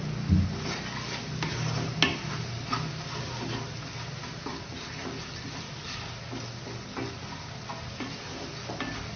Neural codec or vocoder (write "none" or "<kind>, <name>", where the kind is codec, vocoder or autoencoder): none